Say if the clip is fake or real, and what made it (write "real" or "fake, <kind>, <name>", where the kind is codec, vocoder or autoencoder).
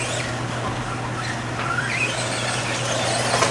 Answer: real